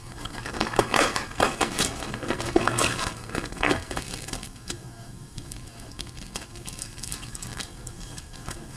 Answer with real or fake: fake